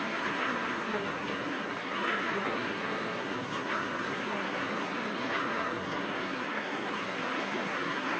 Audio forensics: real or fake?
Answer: fake